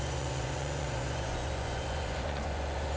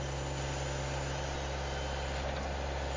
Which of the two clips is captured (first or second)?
second